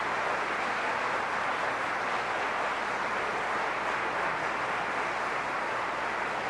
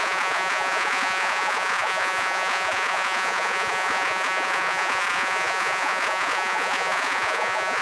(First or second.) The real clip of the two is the first